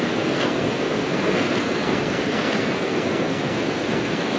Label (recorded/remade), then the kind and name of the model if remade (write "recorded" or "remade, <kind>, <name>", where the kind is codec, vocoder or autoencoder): remade, codec, SNAC